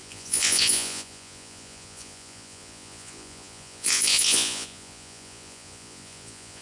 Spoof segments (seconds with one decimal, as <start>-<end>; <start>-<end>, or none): 0.0-6.6